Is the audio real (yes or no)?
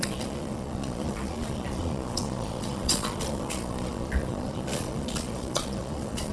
no